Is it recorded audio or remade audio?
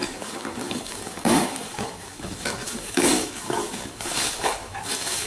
remade